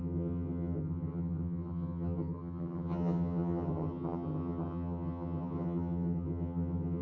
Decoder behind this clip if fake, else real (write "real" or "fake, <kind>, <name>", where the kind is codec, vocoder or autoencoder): fake, vocoder, HiFi-GAN